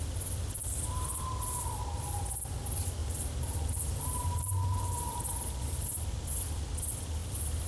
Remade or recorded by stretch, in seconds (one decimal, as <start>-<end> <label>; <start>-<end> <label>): 0.0-3.0 recorded; 3.0-5.3 remade; 5.3-7.7 recorded